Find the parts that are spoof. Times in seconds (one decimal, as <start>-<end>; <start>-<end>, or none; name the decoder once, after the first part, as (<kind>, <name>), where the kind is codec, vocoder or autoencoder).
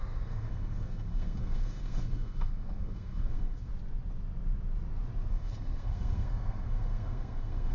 0.0-3.7 (codec, SNAC); 5.3-7.7